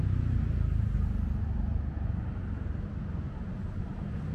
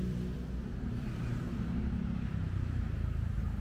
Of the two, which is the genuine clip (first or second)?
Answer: first